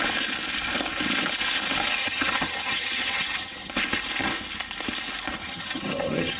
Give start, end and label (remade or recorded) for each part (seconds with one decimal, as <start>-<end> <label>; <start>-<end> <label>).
0.0-2.0 recorded; 2.0-3.7 remade; 3.7-5.4 recorded; 5.4-6.4 remade